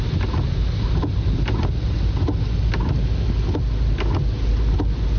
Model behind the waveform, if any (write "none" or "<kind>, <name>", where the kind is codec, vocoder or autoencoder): none